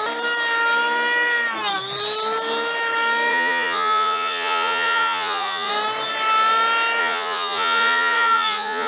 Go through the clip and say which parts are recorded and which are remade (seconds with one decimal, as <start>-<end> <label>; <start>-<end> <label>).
0.0-3.3 recorded; 3.3-5.7 remade; 5.7-7.0 recorded; 7.0-8.9 remade